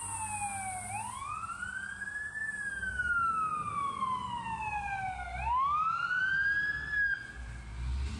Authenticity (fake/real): real